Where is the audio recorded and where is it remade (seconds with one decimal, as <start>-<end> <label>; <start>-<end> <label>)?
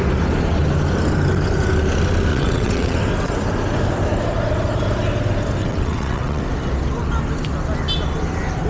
0.0-2.3 recorded; 2.3-3.0 remade; 3.0-5.6 recorded; 5.6-6.4 remade; 6.4-8.7 recorded